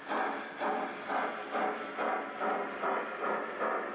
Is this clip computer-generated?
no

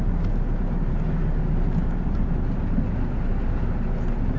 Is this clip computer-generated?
no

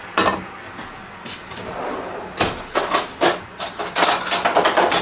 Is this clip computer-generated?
no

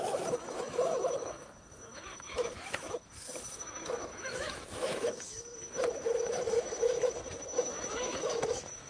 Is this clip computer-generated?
yes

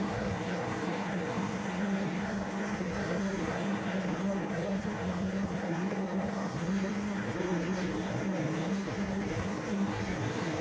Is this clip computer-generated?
yes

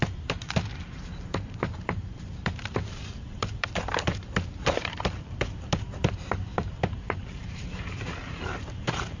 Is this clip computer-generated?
yes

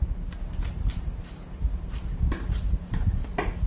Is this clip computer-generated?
no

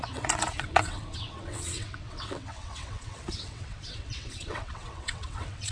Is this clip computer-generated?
yes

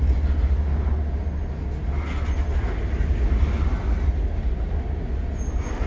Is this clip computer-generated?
no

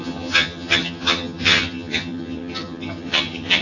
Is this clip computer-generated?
yes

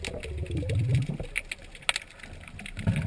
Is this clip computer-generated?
no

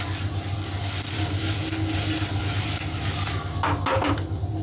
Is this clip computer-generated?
no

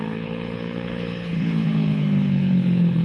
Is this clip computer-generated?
yes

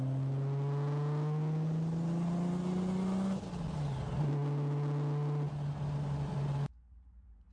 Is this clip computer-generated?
no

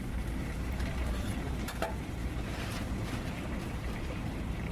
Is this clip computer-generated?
yes